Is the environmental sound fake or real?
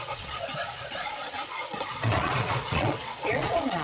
fake